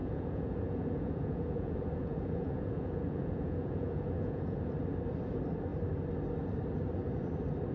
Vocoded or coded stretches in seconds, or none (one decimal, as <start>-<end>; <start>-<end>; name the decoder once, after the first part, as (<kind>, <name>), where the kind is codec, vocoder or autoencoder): 0.0-4.6 (vocoder, Vocos)